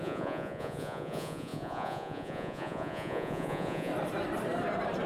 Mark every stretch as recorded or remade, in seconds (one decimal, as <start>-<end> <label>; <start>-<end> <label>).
0.0-3.9 remade; 3.9-5.1 recorded